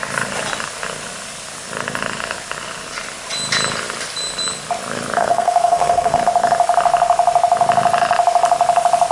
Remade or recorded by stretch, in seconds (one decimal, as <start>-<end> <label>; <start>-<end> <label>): 0.0-5.2 recorded; 5.2-6.2 remade; 6.2-9.1 recorded